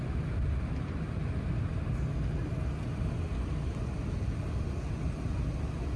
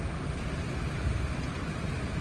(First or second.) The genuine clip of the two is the first